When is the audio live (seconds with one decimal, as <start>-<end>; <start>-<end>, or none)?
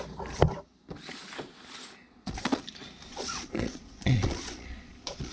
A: 0.0-2.0; 2.6-3.1